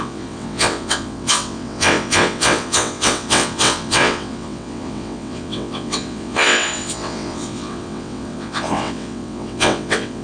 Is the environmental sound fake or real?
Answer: fake